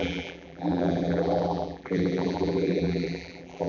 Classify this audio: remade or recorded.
remade